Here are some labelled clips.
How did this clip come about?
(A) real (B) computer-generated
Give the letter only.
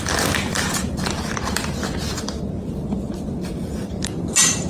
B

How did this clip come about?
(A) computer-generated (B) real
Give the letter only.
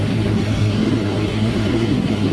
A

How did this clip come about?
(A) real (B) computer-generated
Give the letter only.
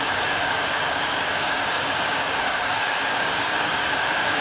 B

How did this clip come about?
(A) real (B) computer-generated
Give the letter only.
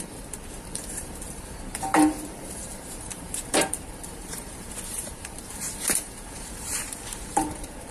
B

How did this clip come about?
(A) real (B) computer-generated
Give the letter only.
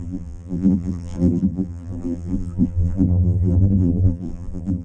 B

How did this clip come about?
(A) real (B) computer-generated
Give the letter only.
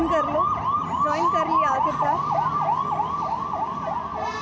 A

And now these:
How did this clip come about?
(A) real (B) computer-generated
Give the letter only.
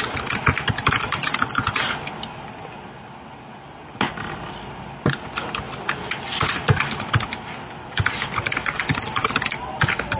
A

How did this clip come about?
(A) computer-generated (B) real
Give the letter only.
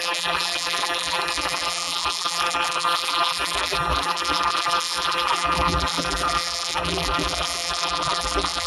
A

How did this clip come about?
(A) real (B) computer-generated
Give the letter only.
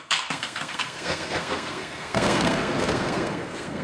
B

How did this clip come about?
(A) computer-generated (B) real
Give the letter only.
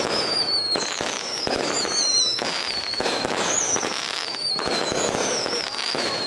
A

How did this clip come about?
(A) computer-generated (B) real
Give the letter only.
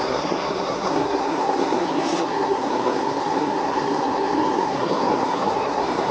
A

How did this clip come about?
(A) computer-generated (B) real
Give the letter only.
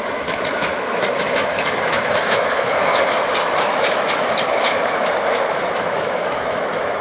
A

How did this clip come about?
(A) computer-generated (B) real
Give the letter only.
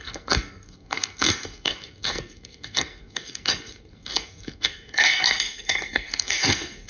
A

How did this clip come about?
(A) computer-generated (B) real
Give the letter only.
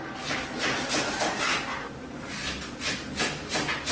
B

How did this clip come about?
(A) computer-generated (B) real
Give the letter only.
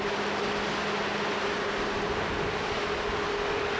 B